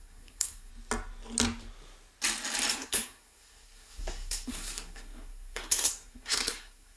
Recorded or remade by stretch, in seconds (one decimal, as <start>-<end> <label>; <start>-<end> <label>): 0.0-0.7 remade; 0.7-2.7 recorded; 2.7-7.0 remade